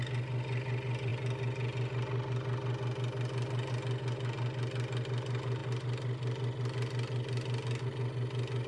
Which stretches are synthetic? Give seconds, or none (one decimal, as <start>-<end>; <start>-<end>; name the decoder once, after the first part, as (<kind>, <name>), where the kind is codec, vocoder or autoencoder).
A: none